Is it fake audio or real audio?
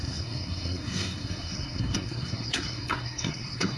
fake